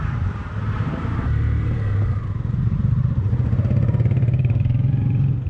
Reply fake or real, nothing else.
fake